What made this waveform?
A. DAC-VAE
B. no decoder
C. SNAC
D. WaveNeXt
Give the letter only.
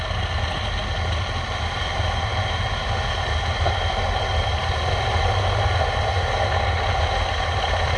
B